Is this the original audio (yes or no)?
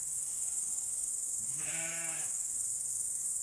no